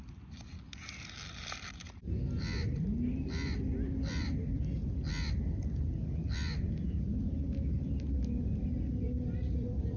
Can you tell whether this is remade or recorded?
recorded